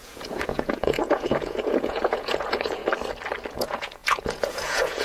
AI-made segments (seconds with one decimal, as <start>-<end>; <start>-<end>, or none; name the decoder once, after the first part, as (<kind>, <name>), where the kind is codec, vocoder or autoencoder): 0.0-2.8 (vocoder, Vocos); 3.5-5.0